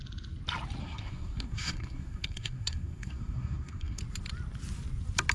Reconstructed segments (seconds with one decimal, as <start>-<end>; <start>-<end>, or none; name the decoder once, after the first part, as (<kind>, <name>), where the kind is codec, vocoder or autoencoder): 0.8-4.0 (codec, SNAC)